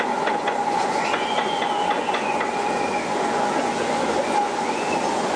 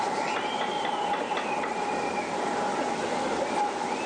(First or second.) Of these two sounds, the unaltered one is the second